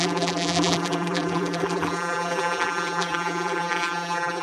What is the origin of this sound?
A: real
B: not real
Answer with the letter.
B